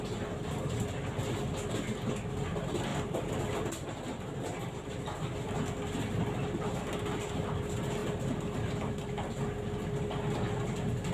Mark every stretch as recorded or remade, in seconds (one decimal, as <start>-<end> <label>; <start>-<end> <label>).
0.0-2.9 recorded; 2.9-3.4 remade; 3.4-4.6 recorded; 4.6-5.2 remade; 5.2-11.1 recorded